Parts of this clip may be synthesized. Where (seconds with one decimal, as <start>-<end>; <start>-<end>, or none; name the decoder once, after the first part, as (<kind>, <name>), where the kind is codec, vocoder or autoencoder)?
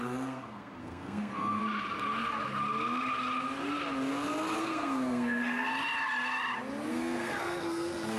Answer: 0.0-1.6 (codec, SNAC); 4.6-5.7; 6.9-8.2